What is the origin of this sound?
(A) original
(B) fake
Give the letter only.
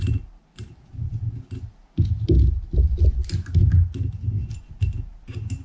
A